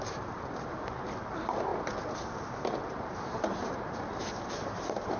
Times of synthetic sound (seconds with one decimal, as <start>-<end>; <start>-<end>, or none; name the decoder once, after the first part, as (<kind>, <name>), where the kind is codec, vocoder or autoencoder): 0.0-1.7 (vocoder, BigVGAN v2); 2.8-5.2